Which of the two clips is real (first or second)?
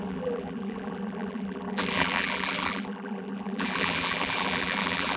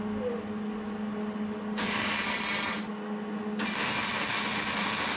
second